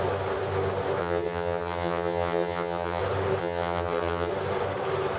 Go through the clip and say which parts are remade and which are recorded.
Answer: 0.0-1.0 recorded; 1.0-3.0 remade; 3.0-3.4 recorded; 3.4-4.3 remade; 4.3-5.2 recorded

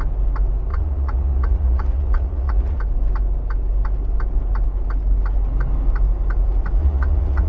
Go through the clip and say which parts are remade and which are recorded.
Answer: 0.0-0.7 recorded; 0.7-2.8 remade; 2.8-6.8 recorded; 6.8-7.5 remade

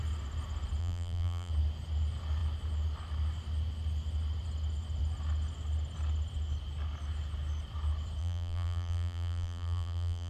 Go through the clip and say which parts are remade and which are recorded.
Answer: 0.0-0.8 recorded; 0.8-1.5 remade; 1.5-8.2 recorded; 8.2-10.3 remade

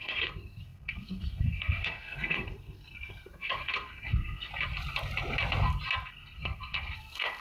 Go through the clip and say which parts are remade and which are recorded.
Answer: 0.0-4.5 remade; 4.5-6.1 recorded; 6.1-7.4 remade